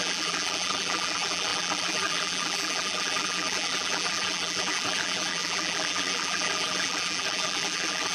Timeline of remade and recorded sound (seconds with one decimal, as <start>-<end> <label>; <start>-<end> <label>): 0.0-8.1 remade